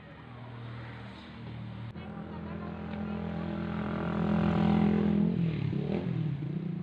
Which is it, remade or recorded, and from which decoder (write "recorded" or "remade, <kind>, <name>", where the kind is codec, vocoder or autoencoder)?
recorded